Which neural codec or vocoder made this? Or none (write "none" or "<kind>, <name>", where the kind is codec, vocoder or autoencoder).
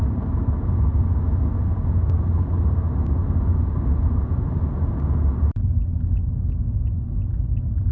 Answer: none